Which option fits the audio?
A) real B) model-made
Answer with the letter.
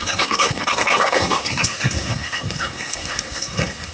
B